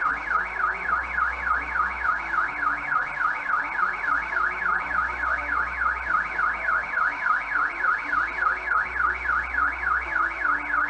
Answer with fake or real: real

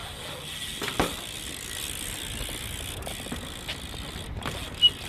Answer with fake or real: real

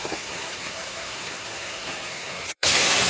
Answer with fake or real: fake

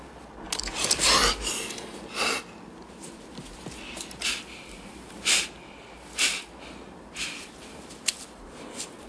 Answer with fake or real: real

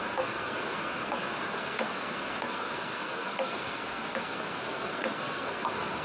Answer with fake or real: fake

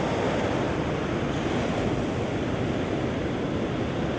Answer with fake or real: real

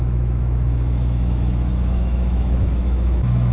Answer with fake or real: fake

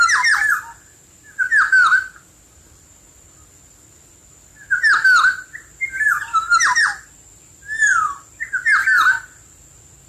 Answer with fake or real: real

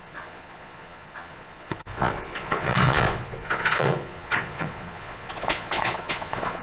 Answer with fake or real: fake